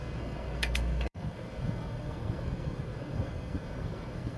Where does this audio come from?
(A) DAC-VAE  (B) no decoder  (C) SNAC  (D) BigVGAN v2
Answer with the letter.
C